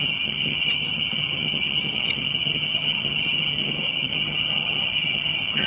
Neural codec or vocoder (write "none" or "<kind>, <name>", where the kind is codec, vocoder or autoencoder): vocoder, HiFi-GAN